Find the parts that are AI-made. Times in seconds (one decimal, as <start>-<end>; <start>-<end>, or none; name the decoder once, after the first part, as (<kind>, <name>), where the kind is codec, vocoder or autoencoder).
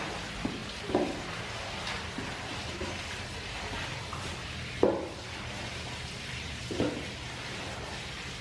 none